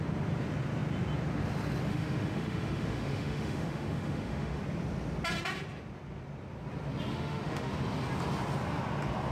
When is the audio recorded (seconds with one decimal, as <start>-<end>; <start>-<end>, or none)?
0.0-1.9; 4.6-7.1; 7.7-9.3